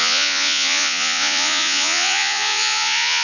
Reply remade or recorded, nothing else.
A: remade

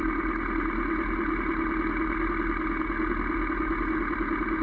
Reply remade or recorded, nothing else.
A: recorded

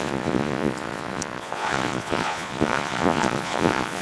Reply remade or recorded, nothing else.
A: remade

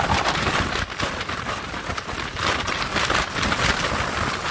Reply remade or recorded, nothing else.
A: recorded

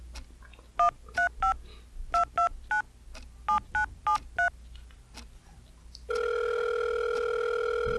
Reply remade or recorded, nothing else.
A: recorded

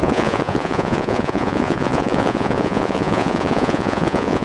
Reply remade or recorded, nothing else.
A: remade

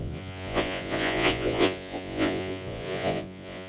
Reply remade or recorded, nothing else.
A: remade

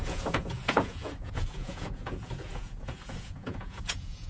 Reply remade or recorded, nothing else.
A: remade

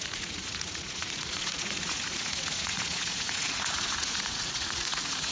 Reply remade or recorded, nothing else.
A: remade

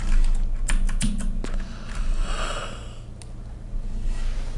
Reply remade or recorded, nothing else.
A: recorded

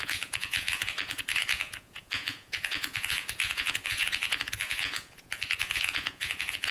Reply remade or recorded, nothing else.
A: remade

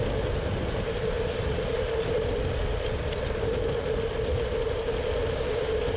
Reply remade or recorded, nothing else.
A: recorded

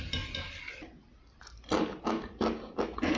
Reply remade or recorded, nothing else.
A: recorded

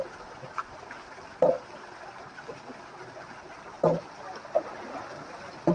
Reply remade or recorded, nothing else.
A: recorded